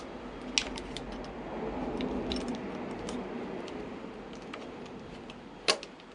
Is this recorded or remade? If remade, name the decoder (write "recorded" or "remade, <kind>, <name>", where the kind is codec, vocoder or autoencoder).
recorded